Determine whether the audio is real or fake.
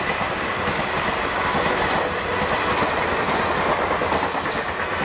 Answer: real